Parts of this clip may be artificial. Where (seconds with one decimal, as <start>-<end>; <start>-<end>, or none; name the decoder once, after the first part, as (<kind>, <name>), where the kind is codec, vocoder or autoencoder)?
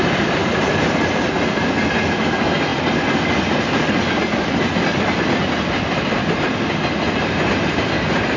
none